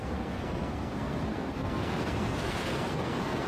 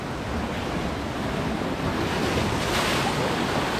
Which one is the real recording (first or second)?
second